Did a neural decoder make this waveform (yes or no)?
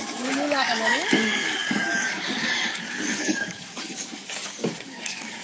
yes